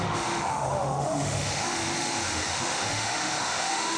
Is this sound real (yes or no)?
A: no